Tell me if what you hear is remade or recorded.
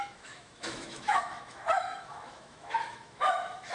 remade